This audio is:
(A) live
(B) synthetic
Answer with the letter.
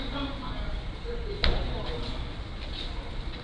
A